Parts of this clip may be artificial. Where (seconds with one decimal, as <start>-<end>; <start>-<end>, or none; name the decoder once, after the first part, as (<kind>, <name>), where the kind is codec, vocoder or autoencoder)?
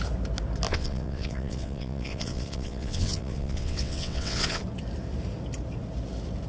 0.7-4.6 (vocoder, WaveNeXt)